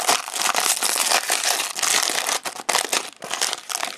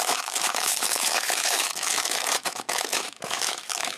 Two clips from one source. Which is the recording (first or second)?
first